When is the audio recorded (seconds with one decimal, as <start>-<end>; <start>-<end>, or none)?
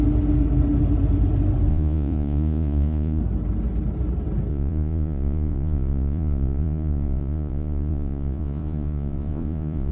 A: 0.0-1.7; 3.2-4.5